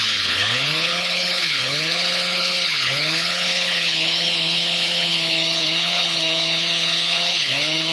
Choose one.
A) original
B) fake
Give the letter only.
B